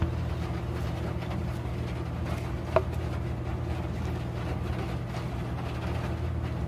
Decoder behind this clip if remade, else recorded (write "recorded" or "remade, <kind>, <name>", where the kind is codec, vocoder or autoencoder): recorded